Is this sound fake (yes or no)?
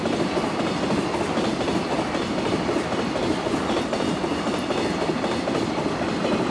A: no